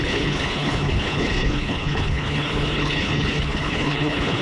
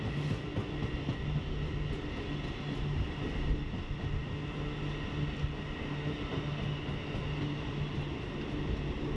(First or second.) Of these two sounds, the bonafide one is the second